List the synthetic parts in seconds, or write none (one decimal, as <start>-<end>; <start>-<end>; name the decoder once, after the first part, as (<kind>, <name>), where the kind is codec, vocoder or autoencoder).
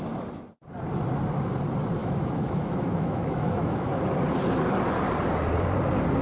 2.0-4.0 (autoencoder, DAC-VAE)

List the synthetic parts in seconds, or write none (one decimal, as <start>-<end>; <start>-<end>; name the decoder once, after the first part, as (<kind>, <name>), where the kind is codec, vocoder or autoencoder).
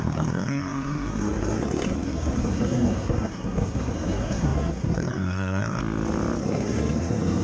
0.0-5.8 (codec, SNAC); 6.4-7.4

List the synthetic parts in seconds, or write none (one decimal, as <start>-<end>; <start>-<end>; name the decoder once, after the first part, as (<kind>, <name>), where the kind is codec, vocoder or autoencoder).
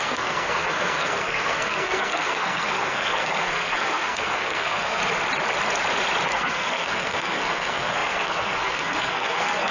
0.0-5.0 (codec, SNAC); 6.3-9.7